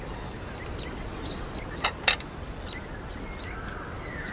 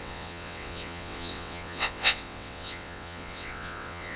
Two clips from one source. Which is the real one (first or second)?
first